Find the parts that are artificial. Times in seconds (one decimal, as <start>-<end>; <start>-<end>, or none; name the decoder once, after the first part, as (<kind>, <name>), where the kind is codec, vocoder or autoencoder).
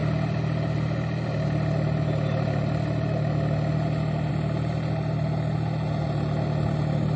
none